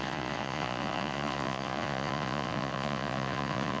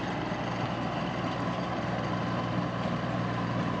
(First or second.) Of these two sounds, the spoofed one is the first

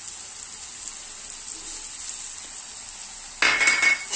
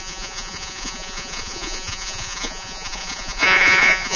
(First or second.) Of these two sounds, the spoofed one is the second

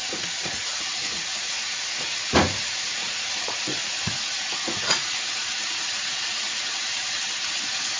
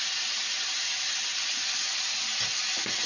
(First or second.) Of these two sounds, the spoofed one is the first